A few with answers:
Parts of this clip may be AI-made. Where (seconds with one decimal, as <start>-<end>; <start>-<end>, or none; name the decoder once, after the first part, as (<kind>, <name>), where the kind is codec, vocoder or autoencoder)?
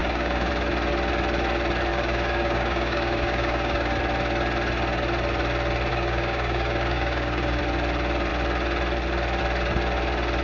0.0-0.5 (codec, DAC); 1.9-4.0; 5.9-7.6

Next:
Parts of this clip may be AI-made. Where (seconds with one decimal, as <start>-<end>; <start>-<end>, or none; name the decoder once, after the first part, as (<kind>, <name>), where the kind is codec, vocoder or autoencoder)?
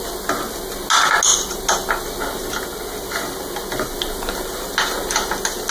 none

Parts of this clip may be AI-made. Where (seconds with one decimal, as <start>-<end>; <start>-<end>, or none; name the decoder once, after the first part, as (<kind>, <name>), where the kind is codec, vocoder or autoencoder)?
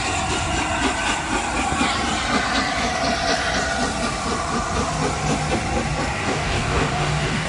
6.2-7.5 (codec, DAC)